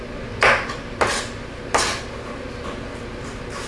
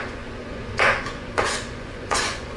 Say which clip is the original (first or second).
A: first